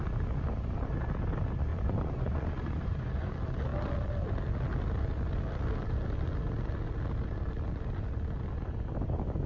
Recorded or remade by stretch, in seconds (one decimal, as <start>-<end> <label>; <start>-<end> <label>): 0.0-1.7 recorded; 1.7-3.3 remade; 3.3-9.5 recorded